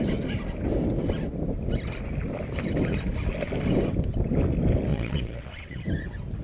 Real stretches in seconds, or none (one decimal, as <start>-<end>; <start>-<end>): 0.0-4.9; 5.8-6.4